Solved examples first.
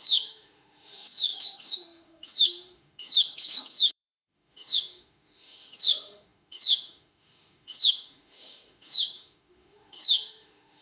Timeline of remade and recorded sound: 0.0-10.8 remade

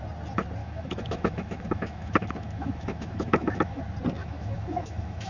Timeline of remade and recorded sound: 0.0-0.6 recorded; 0.6-3.8 remade; 3.8-4.2 recorded; 4.2-5.3 remade

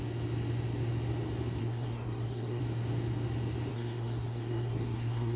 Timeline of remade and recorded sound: 0.0-1.6 recorded; 1.6-2.6 remade; 2.6-3.7 recorded; 3.7-5.4 remade

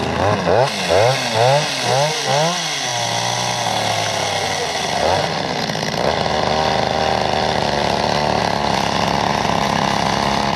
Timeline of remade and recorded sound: 0.0-10.6 recorded

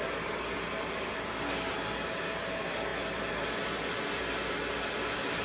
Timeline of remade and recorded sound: 0.0-5.4 recorded

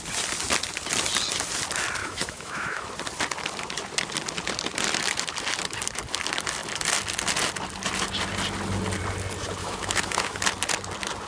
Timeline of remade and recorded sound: 0.0-2.0 recorded; 2.0-2.9 remade; 2.9-9.6 recorded; 9.6-10.4 remade; 10.4-11.3 recorded